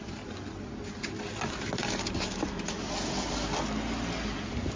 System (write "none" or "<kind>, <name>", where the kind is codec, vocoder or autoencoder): none